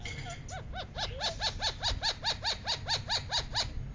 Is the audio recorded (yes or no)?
yes